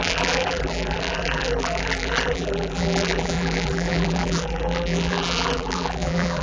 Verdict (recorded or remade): remade